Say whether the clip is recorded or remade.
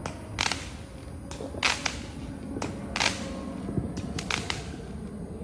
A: recorded